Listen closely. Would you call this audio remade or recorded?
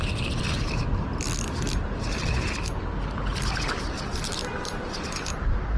recorded